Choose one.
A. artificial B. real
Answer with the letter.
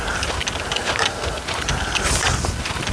B